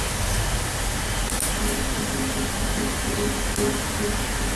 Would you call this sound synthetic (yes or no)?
no